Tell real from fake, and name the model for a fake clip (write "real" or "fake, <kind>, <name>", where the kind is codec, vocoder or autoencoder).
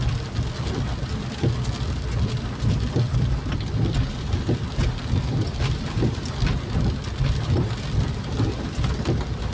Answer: real